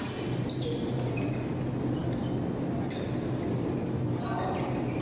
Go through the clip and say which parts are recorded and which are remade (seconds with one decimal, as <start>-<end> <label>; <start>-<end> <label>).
0.0-5.0 recorded